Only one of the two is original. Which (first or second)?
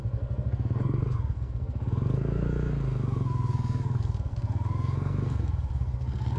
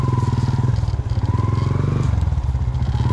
second